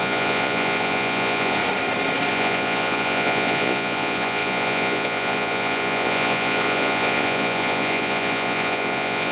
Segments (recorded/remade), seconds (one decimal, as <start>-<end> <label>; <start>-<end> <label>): 0.0-1.6 remade; 1.6-2.3 recorded; 2.3-9.3 remade